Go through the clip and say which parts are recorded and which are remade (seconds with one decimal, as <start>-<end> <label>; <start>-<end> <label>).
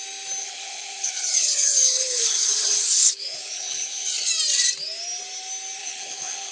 0.0-0.4 recorded; 0.4-4.3 remade; 4.3-5.8 recorded; 5.8-6.5 remade